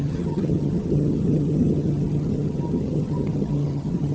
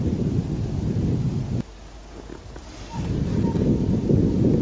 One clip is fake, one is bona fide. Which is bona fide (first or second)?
second